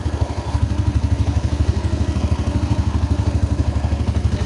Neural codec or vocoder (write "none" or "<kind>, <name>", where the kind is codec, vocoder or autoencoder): codec, SNAC